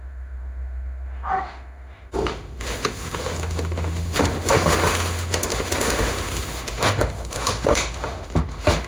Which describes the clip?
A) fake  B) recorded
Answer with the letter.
A